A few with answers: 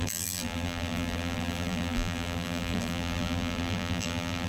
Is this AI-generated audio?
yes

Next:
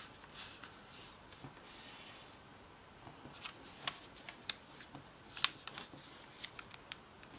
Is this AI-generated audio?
no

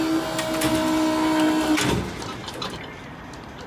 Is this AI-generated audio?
no